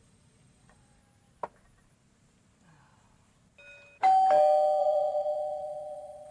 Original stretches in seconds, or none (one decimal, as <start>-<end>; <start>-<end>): 1.0-4.8